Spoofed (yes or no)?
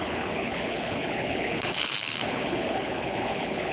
yes